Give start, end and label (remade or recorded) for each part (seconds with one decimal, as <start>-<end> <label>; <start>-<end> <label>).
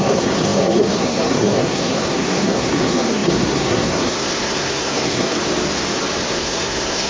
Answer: 0.0-5.4 remade; 5.4-6.3 recorded; 6.3-7.1 remade